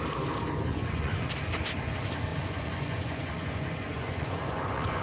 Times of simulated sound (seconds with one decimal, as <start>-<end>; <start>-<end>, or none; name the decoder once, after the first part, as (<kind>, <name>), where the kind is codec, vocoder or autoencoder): 0.7-1.3 (vocoder, Vocos); 2.3-5.0